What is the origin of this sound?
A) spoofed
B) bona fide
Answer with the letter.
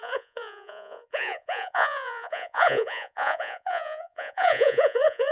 A